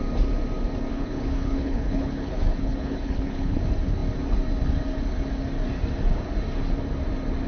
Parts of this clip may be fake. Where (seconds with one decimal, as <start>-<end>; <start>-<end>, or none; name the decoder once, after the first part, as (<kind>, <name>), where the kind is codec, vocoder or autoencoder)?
0.9-3.6 (codec, HILCodec)